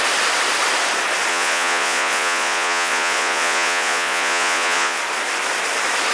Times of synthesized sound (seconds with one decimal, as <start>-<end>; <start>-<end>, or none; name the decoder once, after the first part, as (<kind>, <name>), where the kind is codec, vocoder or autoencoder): 1.3-5.0 (vocoder, Vocos)